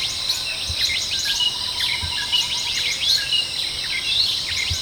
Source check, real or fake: real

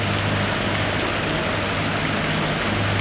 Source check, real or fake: real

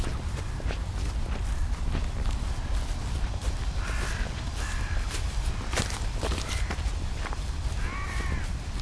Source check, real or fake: real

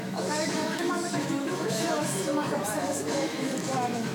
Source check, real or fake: fake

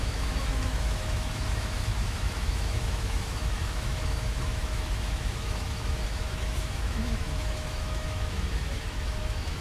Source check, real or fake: fake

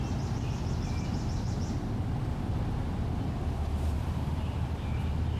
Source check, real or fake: real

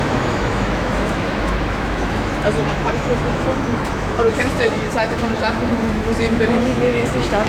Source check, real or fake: fake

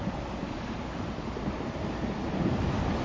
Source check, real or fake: real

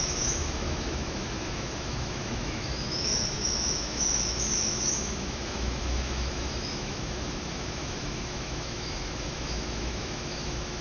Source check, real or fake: fake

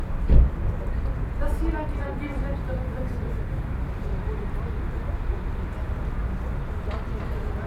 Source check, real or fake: real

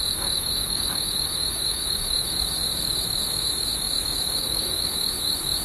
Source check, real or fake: fake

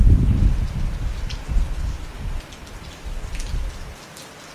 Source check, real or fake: real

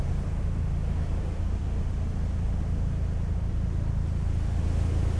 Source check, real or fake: real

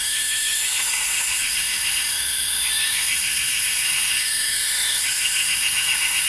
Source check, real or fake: fake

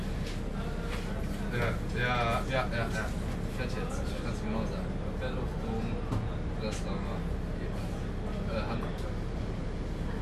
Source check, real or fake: real